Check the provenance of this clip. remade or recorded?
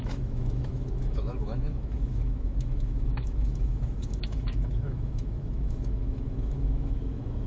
remade